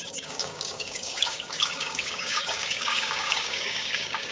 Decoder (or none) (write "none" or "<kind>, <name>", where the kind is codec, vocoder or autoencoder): codec, DAC